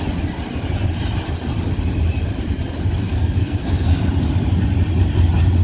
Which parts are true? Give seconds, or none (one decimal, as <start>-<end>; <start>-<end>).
0.0-3.1; 4.0-5.6